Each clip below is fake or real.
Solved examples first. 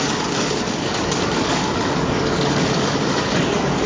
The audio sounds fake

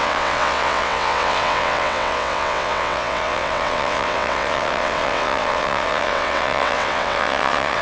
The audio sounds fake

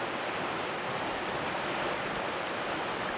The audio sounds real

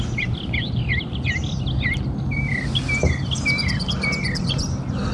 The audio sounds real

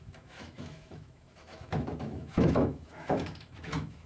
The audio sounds fake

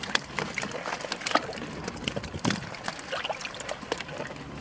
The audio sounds real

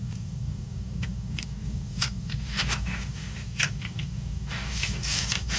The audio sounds fake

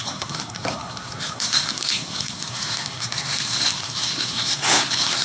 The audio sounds fake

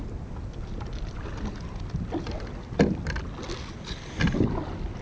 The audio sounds real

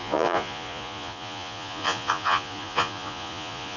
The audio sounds fake